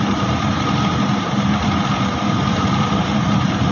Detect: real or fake fake